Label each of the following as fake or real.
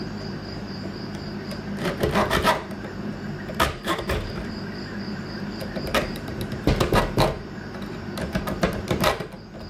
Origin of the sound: fake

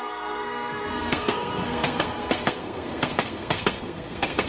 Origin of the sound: fake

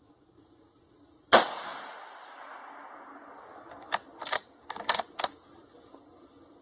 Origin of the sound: real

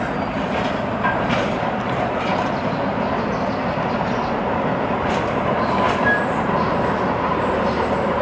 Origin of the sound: real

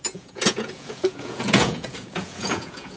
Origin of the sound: fake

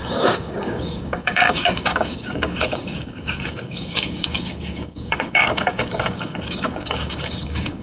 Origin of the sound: fake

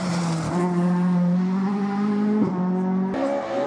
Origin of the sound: real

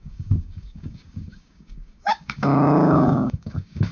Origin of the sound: fake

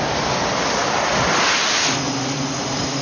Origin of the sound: real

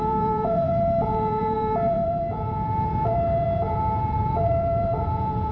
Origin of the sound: fake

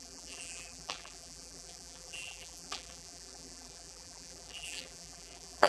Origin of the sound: fake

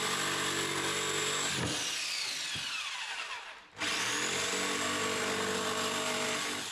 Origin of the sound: real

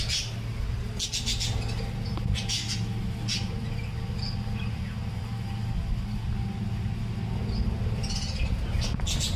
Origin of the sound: real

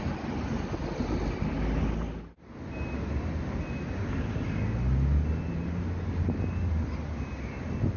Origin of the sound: real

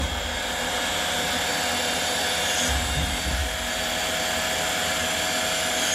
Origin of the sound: real